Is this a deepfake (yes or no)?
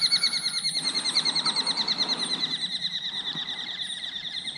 yes